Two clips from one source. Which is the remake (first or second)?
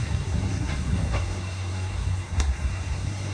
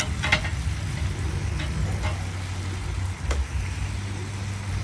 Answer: first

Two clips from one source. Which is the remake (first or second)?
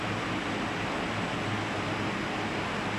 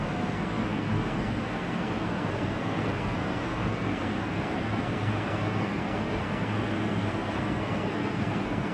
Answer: second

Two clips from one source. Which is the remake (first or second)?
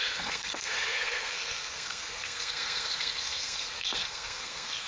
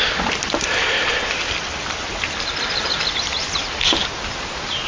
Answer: first